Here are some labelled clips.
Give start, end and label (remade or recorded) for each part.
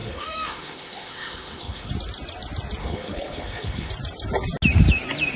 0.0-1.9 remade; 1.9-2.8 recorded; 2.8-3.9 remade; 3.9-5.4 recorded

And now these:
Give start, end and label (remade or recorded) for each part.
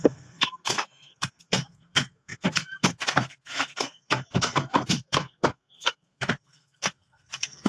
0.0-7.7 remade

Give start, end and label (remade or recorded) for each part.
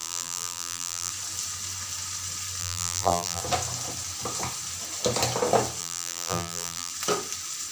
0.0-1.1 remade; 1.1-2.6 recorded; 2.6-3.4 remade; 3.4-5.8 recorded; 5.8-6.9 remade; 6.9-7.7 recorded